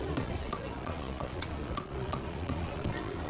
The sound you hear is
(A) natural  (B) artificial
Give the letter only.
B